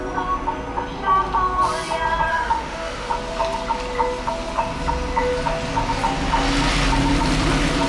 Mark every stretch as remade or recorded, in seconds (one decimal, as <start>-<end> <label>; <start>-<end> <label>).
0.0-2.3 recorded; 2.3-3.1 remade; 3.1-7.9 recorded